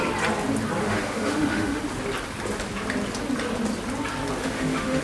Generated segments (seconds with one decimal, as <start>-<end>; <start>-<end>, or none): 0.8-1.8; 4.4-5.0